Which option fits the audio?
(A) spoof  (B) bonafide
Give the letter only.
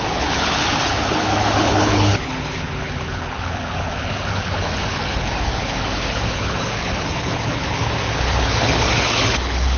A